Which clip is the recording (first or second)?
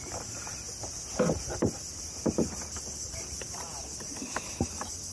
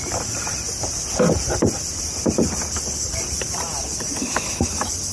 first